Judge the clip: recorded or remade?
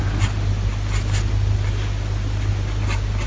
recorded